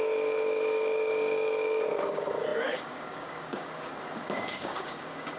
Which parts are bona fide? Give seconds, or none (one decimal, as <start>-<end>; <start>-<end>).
none